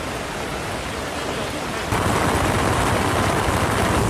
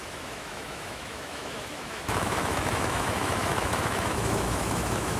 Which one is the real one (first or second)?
first